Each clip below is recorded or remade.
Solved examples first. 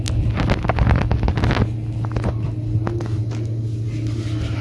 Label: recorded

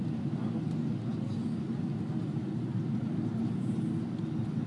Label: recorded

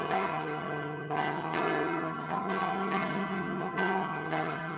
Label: remade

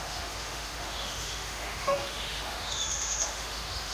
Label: remade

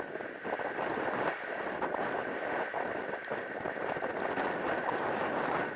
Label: recorded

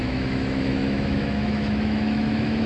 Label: remade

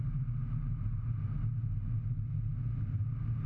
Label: recorded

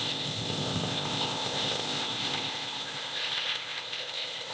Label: remade